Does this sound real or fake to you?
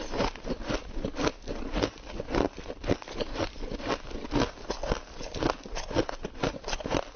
real